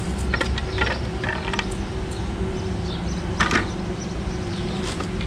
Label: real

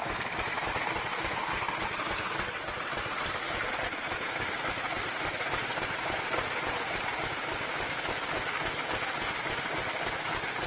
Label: real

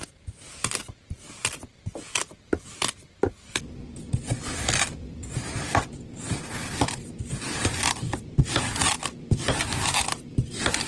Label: real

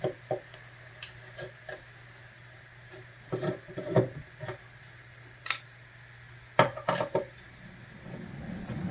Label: real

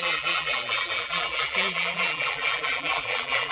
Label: fake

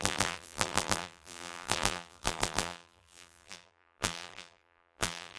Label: fake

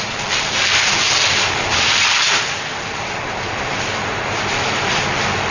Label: fake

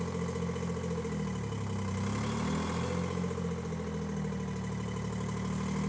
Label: real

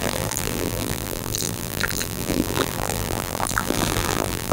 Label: fake